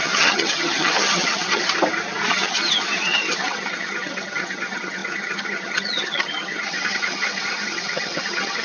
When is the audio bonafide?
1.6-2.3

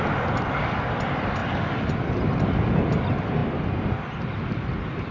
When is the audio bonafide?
0.0-5.1

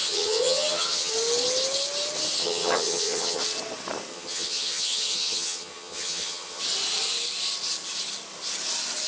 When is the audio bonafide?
1.1-2.4; 3.4-4.1; 6.6-9.1

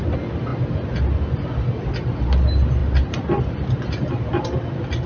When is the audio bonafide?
0.0-5.1

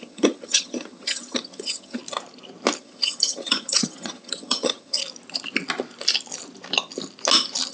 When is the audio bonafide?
2.0-2.8; 5.0-7.7

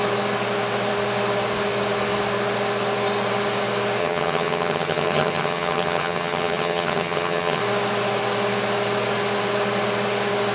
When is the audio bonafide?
0.0-4.0; 7.6-10.5